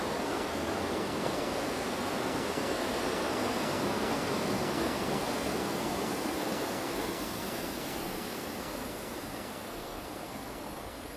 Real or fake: fake